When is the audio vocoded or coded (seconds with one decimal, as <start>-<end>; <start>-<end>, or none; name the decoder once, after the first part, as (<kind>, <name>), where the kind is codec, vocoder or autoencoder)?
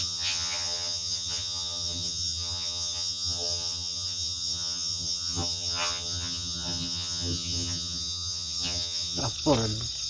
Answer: 0.0-9.2 (vocoder, HiFi-GAN)